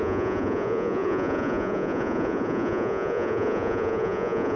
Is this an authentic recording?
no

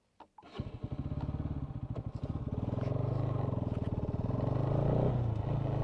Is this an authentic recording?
yes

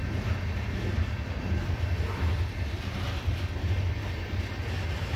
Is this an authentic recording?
yes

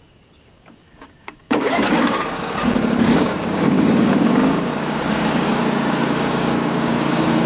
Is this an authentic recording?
no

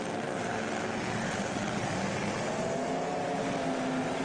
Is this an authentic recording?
yes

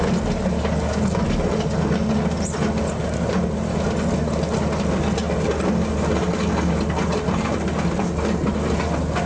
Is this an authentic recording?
yes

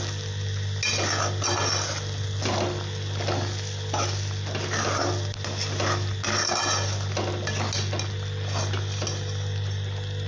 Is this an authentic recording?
yes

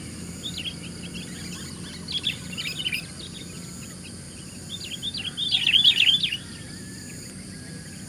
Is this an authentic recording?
yes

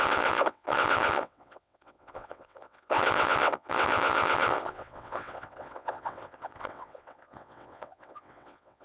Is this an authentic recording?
no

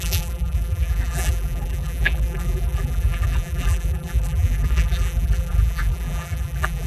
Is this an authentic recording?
no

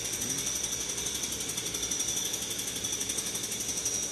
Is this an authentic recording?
yes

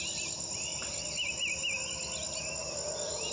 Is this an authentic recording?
yes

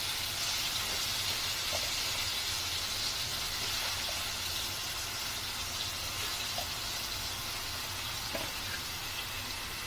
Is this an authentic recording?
yes